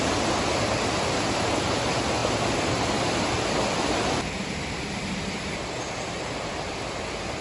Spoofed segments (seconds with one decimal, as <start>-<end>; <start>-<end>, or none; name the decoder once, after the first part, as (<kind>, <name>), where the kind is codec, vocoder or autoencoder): none

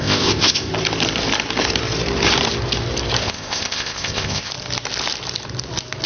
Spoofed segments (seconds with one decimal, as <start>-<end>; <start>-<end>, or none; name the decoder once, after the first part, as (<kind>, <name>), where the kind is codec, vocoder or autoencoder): 0.0-0.7 (codec, ZipCodec); 3.2-4.5

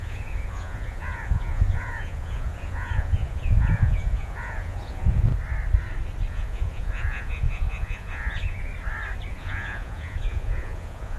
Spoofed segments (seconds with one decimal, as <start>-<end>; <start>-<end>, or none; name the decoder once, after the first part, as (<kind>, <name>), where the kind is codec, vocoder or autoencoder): 0.0-5.3 (vocoder, Vocos); 6.3-8.7; 9.3-11.2

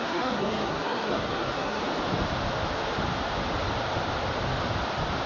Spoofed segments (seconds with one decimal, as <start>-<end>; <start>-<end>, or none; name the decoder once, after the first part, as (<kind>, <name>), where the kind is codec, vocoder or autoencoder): 0.0-1.8 (codec, SNAC)